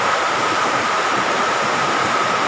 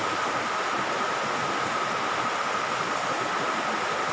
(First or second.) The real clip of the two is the second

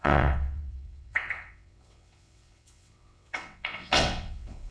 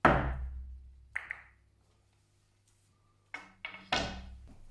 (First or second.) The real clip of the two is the second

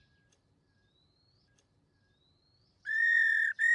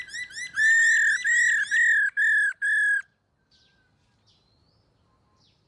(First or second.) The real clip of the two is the second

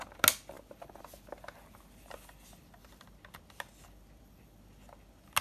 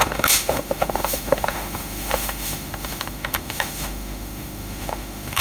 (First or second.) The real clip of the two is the first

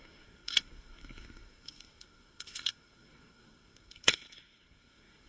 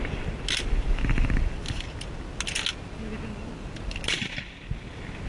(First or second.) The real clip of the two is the second